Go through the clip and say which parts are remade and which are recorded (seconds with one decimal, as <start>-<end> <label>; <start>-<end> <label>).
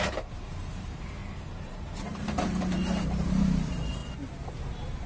0.0-4.0 remade; 4.0-4.5 recorded; 4.5-5.1 remade